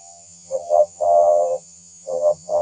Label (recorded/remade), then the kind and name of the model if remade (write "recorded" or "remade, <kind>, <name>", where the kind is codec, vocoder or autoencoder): remade, vocoder, HiFi-GAN